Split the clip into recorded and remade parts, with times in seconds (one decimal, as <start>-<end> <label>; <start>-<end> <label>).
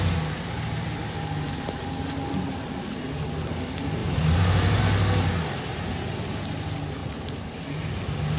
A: 0.0-4.0 recorded; 4.0-4.8 remade; 4.8-7.0 recorded; 7.0-7.5 remade; 7.5-8.4 recorded